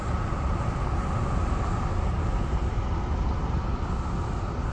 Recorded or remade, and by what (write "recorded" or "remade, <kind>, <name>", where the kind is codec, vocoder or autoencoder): recorded